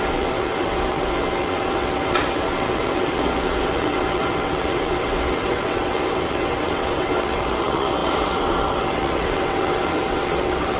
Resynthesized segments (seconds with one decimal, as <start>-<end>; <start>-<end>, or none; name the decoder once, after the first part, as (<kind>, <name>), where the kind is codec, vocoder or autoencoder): 0.0-10.8 (vocoder, WaveNeXt)